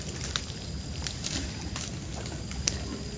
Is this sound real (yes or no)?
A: yes